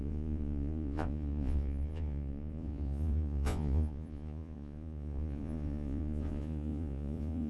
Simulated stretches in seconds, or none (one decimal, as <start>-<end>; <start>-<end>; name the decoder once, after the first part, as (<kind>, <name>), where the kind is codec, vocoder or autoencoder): 0.0-7.5 (vocoder, Vocos)